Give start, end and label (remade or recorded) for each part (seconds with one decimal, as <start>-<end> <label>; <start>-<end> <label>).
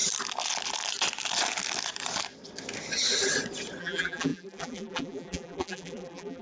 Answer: 0.0-3.8 recorded; 3.8-6.4 remade